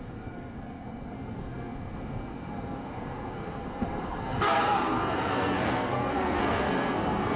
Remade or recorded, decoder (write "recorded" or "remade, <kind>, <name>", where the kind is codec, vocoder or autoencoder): remade, codec, SNAC